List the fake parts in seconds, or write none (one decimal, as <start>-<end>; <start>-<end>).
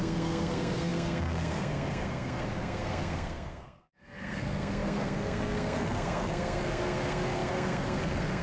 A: 0.0-8.4